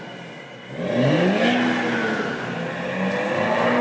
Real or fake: real